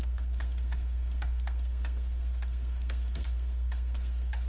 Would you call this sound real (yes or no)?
no